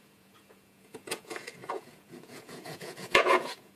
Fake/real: fake